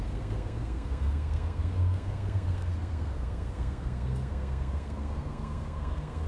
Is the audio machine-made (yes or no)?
yes